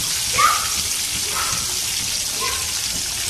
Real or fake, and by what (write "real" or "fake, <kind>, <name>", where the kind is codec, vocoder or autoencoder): real